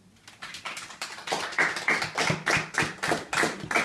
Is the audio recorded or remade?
recorded